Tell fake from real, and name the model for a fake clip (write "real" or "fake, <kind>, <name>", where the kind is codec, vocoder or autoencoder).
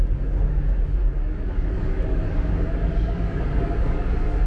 fake, codec, DAC